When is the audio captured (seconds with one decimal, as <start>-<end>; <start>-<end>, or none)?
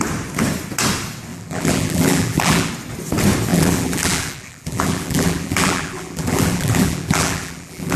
0.0-1.3; 2.7-3.5